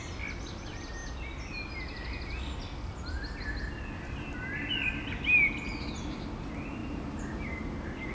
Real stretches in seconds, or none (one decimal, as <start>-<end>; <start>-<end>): 0.0-8.1